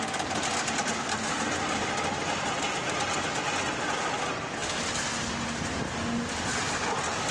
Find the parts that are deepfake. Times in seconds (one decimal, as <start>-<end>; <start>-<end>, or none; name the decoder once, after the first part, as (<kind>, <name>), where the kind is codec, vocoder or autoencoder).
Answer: none